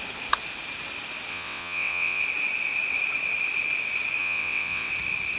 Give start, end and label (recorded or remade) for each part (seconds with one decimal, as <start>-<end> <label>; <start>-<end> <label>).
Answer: 0.0-1.3 recorded; 1.3-2.2 remade; 2.2-4.2 recorded; 4.2-4.9 remade; 4.9-5.4 recorded

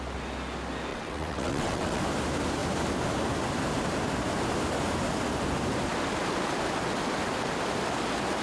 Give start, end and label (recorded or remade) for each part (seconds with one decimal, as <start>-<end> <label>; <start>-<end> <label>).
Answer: 0.0-0.9 recorded; 0.9-2.0 remade; 2.0-8.4 recorded

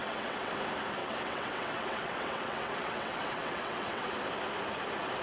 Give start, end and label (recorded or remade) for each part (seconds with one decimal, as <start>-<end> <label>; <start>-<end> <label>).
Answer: 0.0-0.5 remade; 0.5-1.0 recorded; 1.0-4.1 remade; 4.1-5.2 recorded

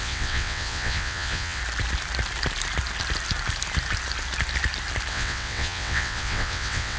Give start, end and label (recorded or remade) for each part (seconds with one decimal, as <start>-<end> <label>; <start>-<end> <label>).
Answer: 0.0-1.6 remade; 1.6-5.1 recorded; 5.1-7.0 remade

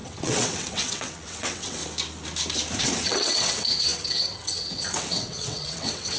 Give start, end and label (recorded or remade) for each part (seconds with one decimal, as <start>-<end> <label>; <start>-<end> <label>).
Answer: 0.0-1.8 remade; 1.8-2.8 recorded; 2.8-6.2 remade

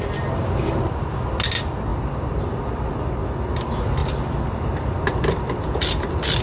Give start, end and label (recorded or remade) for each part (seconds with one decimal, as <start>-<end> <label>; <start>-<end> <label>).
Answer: 0.0-6.4 recorded